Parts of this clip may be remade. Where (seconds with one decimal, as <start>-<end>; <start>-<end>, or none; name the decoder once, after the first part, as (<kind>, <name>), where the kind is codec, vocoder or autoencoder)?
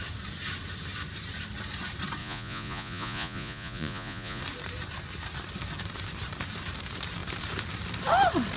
2.2-4.4 (vocoder, Vocos)